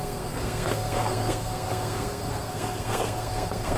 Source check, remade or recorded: remade